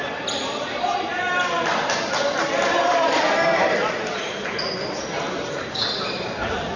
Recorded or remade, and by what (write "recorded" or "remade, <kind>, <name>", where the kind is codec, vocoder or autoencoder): remade, vocoder, BigVGAN v2